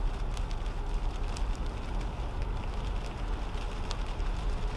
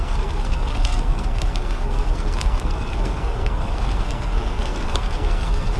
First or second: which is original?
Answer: first